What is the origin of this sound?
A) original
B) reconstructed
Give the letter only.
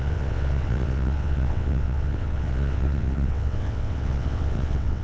B